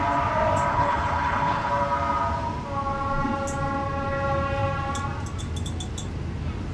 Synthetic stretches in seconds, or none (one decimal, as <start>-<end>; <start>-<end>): 0.7-1.7